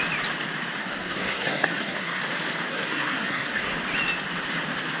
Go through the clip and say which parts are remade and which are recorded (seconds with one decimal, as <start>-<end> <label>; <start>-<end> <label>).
0.0-0.8 recorded; 0.8-2.2 remade; 2.2-2.7 recorded; 2.7-3.7 remade; 3.7-5.0 recorded